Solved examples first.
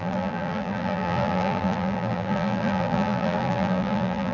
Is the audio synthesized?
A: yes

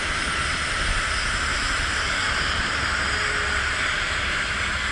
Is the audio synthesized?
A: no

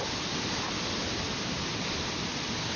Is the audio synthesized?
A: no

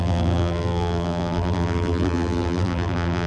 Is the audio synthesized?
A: yes